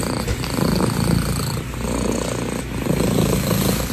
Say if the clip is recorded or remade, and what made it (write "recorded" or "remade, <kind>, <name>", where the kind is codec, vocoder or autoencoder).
recorded